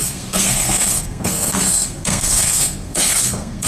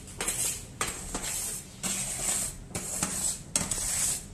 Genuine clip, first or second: second